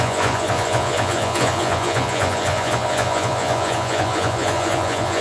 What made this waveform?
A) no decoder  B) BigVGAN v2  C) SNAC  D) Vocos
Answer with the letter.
D